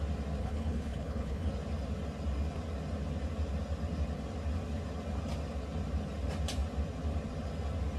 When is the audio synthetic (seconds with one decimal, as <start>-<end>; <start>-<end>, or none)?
0.4-1.5